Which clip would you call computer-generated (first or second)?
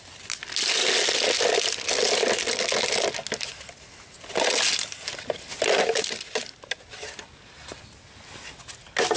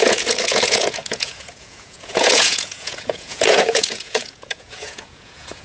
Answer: second